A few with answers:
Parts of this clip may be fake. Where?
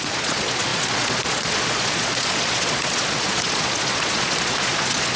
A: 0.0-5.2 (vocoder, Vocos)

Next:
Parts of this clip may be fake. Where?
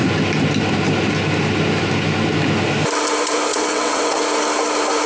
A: 3.5-4.2 (vocoder, WaveNeXt)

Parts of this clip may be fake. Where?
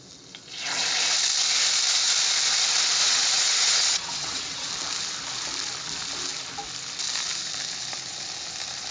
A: 3.0-4.7 (vocoder, WaveNeXt)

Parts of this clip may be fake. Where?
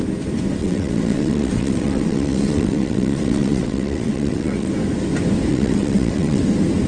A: 0.6-4.7 (vocoder, WaveNeXt); 5.5-6.4